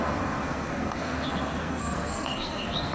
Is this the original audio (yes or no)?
no